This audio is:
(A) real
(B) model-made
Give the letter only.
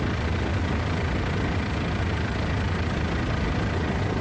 A